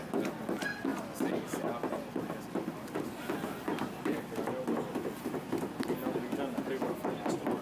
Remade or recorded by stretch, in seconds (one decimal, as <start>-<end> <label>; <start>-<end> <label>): 0.0-7.6 recorded